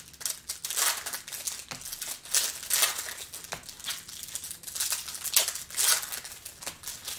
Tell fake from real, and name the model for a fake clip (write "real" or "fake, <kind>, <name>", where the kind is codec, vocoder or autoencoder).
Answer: real